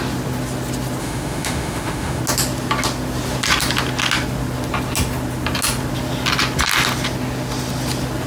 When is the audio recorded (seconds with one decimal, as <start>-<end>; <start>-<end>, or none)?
0.0-1.0; 2.2-8.3